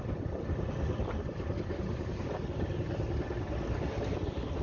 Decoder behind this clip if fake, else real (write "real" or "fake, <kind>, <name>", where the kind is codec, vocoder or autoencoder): real